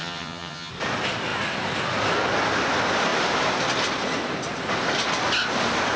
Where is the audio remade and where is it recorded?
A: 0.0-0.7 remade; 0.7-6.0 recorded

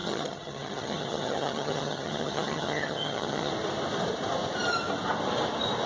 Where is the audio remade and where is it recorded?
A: 0.0-3.5 remade; 3.5-5.9 recorded

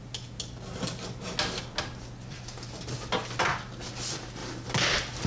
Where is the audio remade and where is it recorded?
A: 0.0-5.3 recorded

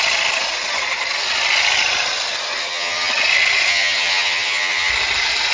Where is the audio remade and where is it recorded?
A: 0.0-2.6 recorded; 2.6-3.1 remade; 3.1-3.7 recorded; 3.7-4.9 remade; 4.9-5.5 recorded